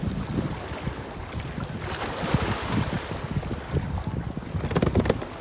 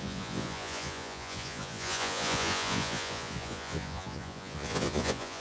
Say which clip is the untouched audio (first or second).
first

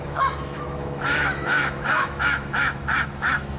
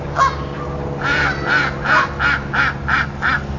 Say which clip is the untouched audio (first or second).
second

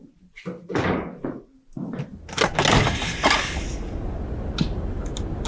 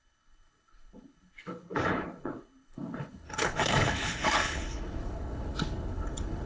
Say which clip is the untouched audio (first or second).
first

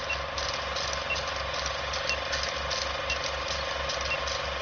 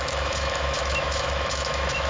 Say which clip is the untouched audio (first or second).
first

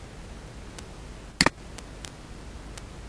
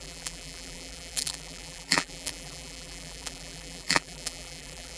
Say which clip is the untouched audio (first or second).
first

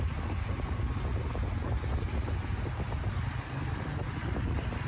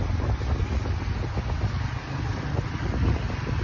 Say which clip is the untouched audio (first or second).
second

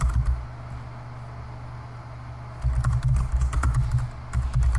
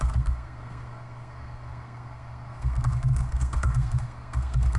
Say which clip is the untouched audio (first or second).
first